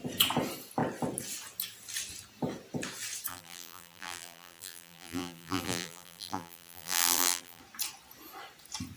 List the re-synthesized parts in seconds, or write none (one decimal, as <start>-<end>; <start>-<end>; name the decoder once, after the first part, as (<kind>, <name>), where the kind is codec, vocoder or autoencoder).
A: 3.3-7.6 (vocoder, BigVGAN v2)